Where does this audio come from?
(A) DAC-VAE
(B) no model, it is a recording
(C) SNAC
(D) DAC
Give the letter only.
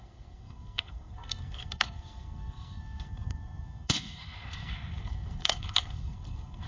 C